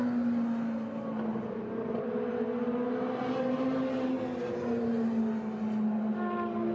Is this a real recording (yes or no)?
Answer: yes